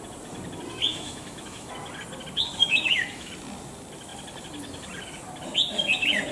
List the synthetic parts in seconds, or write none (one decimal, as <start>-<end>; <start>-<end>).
0.9-1.7; 2.6-3.3